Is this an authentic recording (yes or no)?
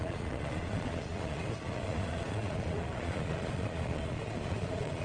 no